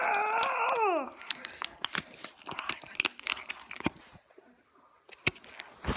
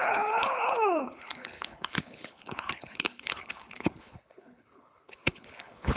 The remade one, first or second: second